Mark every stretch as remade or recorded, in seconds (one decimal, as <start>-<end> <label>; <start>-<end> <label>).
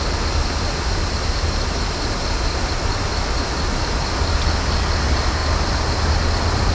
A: 0.0-1.0 recorded; 1.0-2.0 remade; 2.0-6.7 recorded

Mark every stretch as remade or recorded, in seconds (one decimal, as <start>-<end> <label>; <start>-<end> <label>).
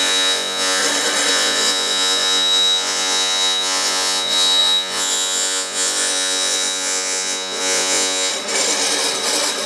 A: 0.0-0.8 remade; 0.8-1.3 recorded; 1.3-8.3 remade; 8.3-9.7 recorded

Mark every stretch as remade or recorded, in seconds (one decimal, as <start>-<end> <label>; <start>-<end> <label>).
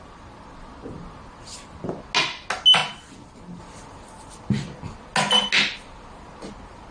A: 0.0-6.9 recorded